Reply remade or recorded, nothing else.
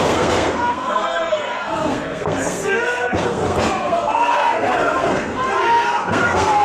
remade